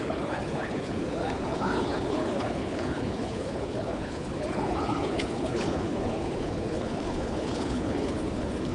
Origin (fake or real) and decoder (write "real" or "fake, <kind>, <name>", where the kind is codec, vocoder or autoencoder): fake, codec, HILCodec